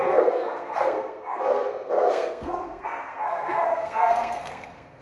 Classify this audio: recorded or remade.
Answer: remade